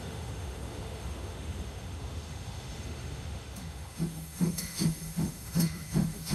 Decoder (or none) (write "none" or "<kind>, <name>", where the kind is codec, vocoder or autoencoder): autoencoder, DAC-VAE